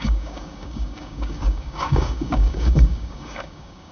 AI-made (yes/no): yes